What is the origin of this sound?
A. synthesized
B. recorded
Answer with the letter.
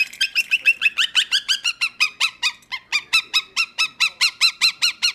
A